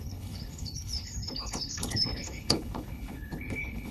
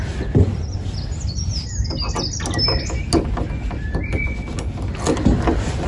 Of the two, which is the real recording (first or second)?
second